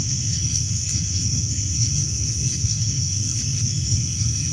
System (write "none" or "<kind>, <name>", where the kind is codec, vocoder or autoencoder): codec, SNAC